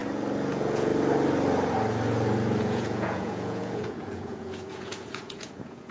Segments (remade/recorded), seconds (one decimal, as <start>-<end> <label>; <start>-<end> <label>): 0.0-0.5 recorded; 0.5-0.9 remade; 0.9-2.6 recorded; 2.6-5.9 remade